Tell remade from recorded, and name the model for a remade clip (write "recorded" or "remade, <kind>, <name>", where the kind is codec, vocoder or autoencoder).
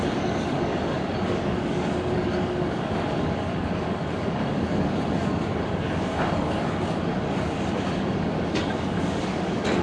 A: remade, codec, DAC